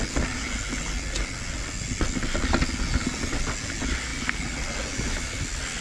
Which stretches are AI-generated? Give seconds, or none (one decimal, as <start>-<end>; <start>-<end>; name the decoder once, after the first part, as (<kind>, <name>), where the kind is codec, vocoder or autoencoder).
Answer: none